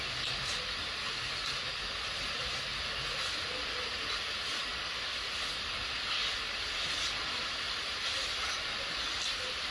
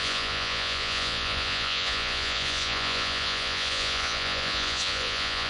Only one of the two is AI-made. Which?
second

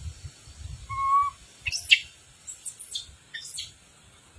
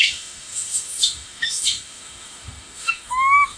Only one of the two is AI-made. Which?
second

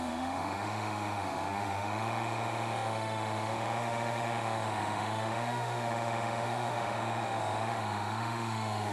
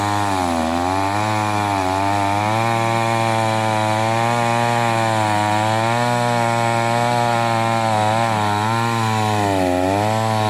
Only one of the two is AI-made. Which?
first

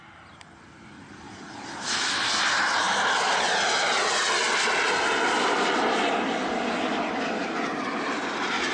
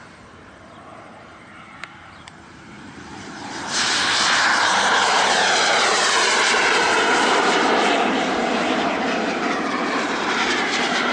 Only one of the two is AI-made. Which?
second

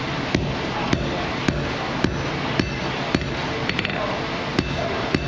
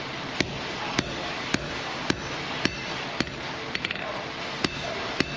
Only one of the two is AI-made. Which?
second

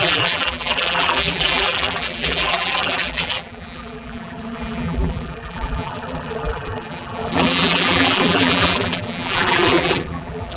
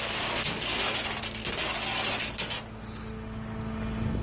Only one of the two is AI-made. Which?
first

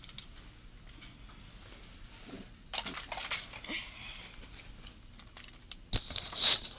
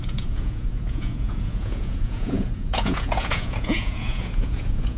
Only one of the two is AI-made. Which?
second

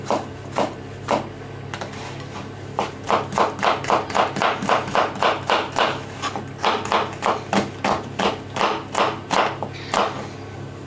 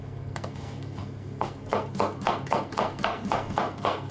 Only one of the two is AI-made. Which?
second